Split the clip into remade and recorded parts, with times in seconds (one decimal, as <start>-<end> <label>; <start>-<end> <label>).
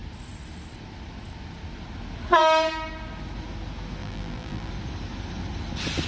0.0-4.0 recorded; 4.0-4.7 remade; 4.7-6.1 recorded